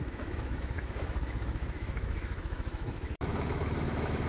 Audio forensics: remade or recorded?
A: remade